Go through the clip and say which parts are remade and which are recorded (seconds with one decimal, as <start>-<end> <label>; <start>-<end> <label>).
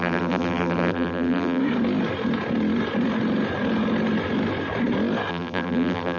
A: 0.0-1.6 remade; 1.6-5.3 recorded; 5.3-6.2 remade